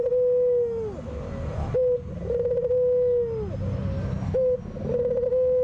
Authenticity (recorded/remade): recorded